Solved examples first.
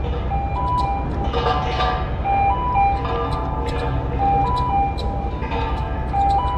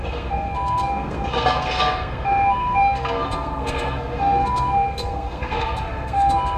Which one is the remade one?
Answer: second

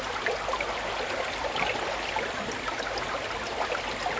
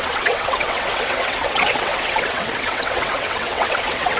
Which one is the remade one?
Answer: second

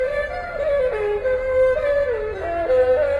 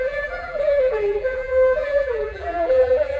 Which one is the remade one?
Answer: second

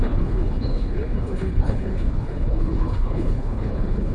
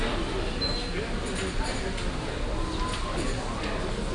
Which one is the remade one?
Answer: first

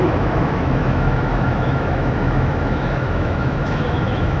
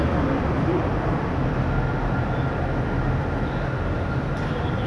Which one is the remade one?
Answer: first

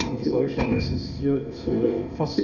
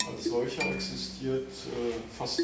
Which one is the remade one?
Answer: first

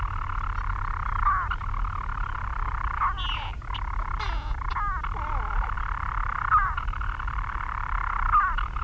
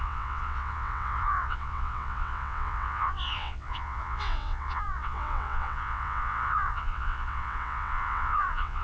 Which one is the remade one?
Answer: second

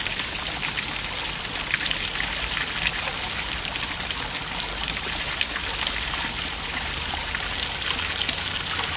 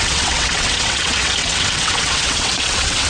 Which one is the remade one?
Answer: second